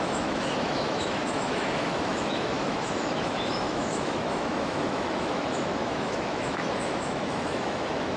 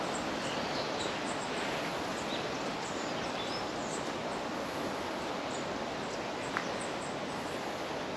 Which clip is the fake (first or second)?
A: first